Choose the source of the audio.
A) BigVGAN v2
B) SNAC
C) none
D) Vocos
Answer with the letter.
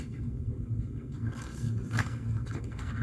B